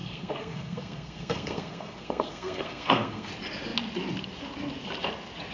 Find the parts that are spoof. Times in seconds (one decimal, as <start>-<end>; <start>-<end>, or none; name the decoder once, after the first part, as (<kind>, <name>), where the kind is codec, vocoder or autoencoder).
0.0-3.3 (codec, SNAC)